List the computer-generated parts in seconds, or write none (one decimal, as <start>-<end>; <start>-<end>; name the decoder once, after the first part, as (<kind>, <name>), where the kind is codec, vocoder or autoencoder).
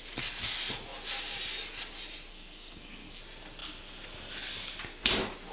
2.3-3.2 (codec, SNAC)